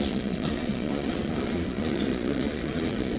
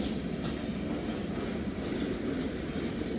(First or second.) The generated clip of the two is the first